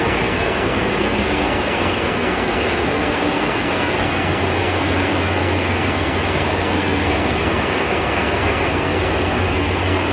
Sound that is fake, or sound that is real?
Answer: fake